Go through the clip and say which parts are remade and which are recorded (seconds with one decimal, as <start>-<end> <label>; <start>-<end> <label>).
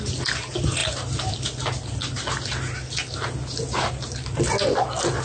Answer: 0.0-5.2 recorded